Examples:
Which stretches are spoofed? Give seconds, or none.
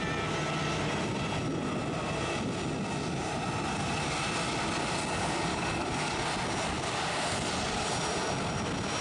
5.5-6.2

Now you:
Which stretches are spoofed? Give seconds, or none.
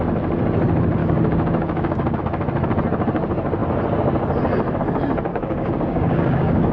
1.0-2.2; 5.3-6.7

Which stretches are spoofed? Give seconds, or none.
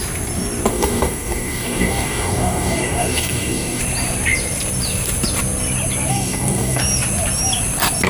0.7-3.8; 6.1-6.8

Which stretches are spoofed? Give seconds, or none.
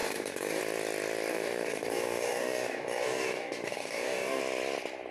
0.0-0.6; 1.3-4.4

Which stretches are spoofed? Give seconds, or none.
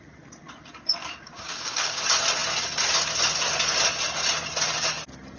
1.0-2.0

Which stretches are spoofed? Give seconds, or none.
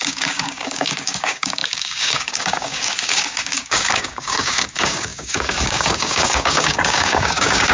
0.0-7.7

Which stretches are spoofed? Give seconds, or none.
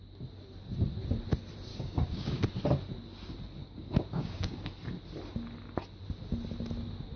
1.7-2.4; 3.6-4.6